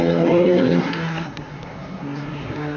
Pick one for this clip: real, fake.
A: fake